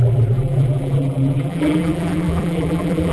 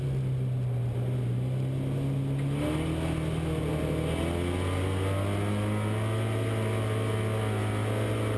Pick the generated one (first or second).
first